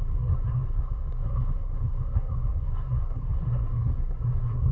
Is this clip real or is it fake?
fake